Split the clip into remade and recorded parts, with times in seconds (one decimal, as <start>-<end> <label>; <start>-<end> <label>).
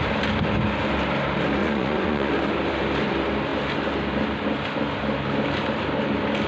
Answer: 0.0-1.6 recorded; 1.6-2.3 remade; 2.3-6.5 recorded